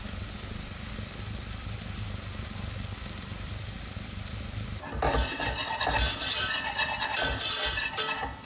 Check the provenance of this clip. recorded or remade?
recorded